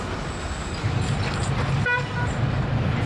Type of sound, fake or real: real